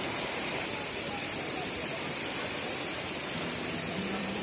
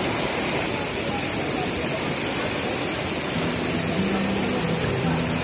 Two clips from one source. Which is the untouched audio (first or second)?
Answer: second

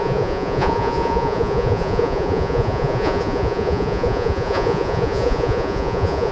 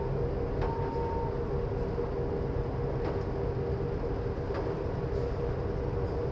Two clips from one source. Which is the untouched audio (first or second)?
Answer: second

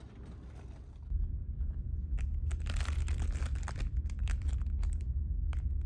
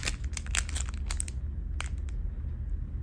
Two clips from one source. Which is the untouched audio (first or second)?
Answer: second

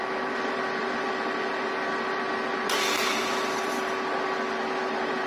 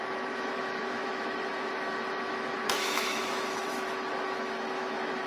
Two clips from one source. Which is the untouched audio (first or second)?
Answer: first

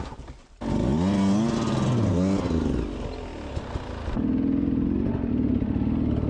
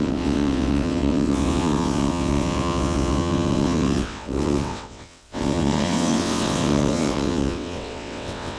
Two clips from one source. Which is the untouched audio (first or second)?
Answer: first